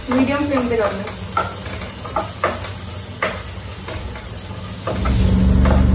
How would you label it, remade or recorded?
recorded